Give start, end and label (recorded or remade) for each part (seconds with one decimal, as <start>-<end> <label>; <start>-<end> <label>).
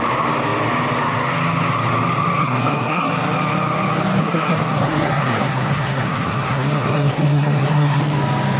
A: 0.0-2.4 recorded; 2.4-3.1 remade; 3.1-4.2 recorded; 4.2-8.0 remade; 8.0-8.6 recorded